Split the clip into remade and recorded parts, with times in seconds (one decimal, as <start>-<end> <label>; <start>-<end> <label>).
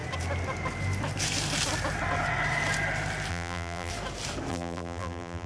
0.0-3.3 recorded; 3.3-3.9 remade; 3.9-4.5 recorded; 4.5-5.5 remade